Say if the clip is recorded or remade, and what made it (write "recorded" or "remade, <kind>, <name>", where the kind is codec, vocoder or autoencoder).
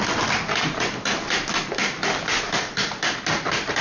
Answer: recorded